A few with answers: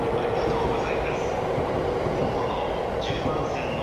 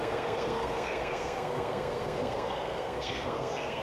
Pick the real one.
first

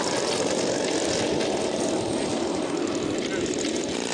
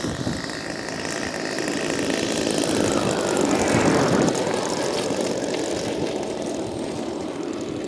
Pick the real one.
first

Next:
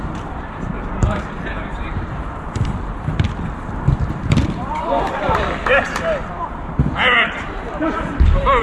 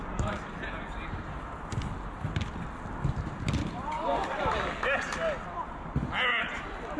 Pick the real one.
second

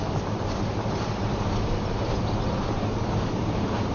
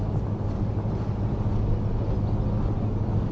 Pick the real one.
second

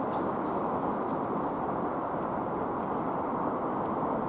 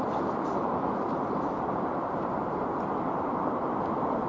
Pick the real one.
first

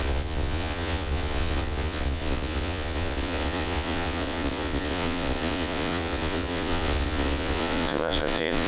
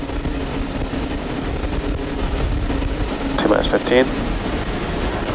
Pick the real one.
second